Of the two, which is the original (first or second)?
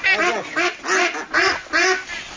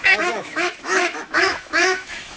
first